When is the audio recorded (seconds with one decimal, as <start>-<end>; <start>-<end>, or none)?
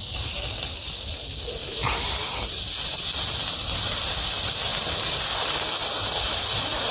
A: 0.0-6.9